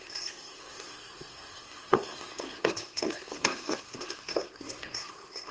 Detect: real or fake fake